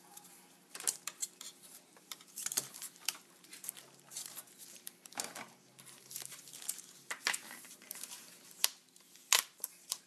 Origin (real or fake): fake